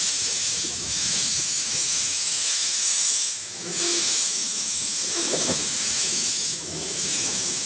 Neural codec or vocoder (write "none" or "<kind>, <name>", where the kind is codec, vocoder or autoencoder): autoencoder, DAC-VAE